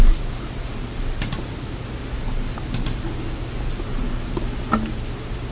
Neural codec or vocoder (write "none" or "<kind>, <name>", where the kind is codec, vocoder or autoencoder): none